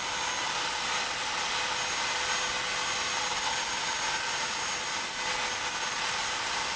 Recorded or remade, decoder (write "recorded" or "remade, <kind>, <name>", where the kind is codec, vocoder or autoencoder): recorded